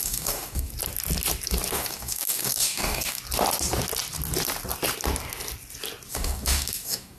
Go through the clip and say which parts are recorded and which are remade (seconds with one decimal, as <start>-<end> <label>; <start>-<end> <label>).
0.0-0.7 remade; 0.7-1.7 recorded; 1.7-3.2 remade; 3.2-6.1 recorded; 6.1-7.2 remade